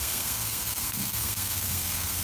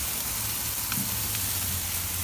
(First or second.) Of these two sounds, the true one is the second